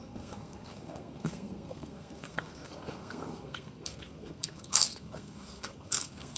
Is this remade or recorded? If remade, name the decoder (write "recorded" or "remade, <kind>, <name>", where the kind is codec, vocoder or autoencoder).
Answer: remade, codec, SNAC